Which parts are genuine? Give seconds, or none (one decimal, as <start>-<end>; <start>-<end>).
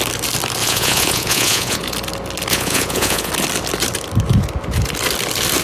0.0-0.6; 1.8-2.5; 3.3-5.6